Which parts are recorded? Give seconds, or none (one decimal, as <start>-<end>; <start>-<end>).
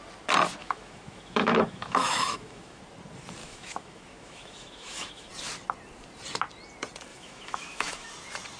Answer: 0.0-0.6; 2.8-3.4; 5.3-7.1; 8.1-8.6